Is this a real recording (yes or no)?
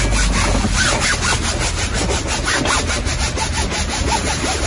yes